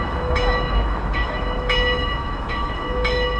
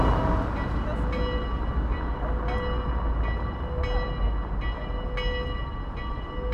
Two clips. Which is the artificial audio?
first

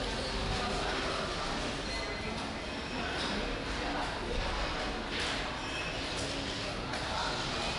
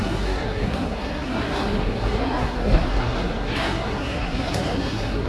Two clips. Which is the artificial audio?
second